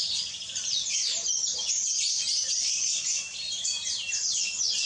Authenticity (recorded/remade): remade